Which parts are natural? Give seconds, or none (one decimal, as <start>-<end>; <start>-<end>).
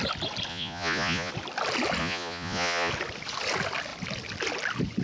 0.0-0.5; 1.3-2.0; 2.9-5.0